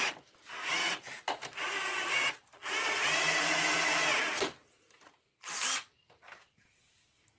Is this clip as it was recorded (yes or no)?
yes